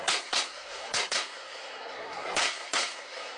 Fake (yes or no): yes